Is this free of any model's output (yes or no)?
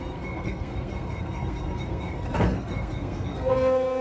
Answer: no